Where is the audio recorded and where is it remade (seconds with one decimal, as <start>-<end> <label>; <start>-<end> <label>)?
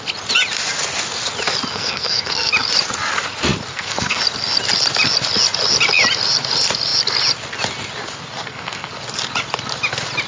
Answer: 0.0-1.7 recorded; 1.7-2.5 remade; 2.5-3.7 recorded; 3.7-4.2 remade; 4.2-8.4 recorded; 8.4-8.9 remade; 8.9-10.3 recorded